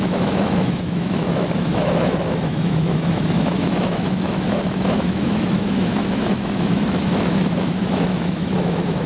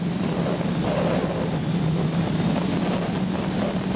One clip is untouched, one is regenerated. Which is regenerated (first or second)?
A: first